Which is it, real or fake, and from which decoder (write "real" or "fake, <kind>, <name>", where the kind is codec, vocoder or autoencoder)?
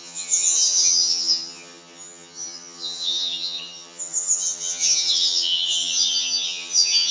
fake, vocoder, HiFi-GAN